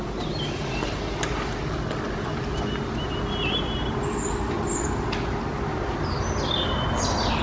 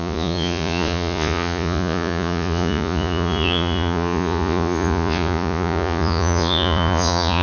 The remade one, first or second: second